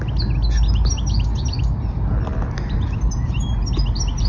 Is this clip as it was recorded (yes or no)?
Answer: yes